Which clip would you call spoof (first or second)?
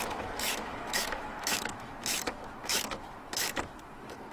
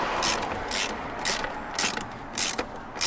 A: first